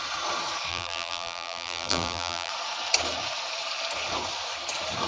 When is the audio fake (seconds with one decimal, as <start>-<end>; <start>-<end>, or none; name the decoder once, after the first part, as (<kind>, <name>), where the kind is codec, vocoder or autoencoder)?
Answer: 0.7-2.5 (vocoder, BigVGAN v2)